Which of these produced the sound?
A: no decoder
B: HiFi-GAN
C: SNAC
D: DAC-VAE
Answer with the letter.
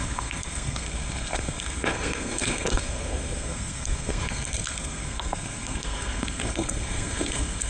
C